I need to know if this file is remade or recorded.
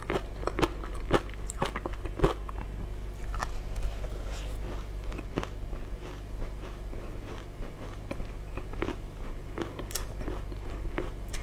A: recorded